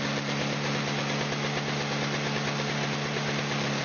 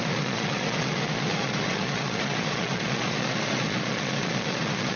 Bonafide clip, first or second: first